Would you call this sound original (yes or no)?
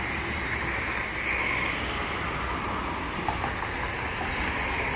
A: yes